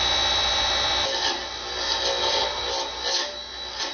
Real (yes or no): yes